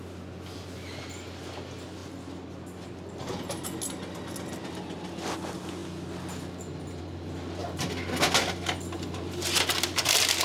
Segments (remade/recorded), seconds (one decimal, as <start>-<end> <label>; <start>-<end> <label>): 0.0-10.4 recorded